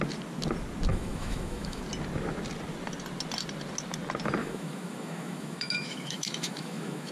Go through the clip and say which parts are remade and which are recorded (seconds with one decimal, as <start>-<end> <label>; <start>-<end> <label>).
0.0-0.9 recorded; 0.9-1.8 remade; 1.8-4.4 recorded; 4.4-7.1 remade